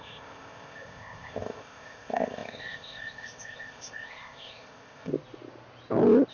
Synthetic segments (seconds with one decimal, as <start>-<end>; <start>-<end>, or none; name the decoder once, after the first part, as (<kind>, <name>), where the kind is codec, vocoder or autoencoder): 0.0-5.1 (codec, ZipCodec)

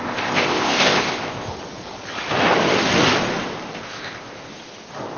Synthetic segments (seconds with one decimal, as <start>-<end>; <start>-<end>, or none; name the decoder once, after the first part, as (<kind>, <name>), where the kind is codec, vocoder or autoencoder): 0.0-1.5 (codec, ZipCodec); 3.8-4.5

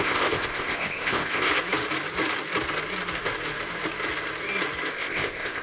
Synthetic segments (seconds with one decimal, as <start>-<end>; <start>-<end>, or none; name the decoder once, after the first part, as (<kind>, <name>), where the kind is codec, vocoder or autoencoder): 0.0-1.5 (codec, ZipCodec); 4.9-5.6

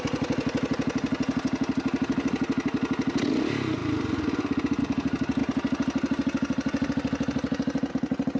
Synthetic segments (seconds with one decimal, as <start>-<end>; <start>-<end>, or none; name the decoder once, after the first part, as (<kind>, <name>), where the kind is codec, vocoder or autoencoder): none

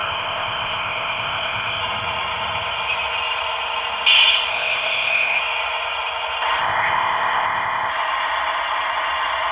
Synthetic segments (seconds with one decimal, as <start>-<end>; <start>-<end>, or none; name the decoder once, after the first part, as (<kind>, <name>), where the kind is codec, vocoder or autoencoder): 0.0-1.8 (codec, ZipCodec); 4.5-5.4; 6.6-7.9